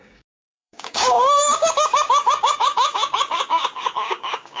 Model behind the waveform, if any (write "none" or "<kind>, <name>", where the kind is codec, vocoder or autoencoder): codec, DAC